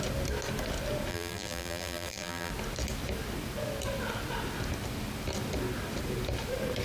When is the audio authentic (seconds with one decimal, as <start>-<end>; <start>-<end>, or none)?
0.0-1.1; 2.5-6.8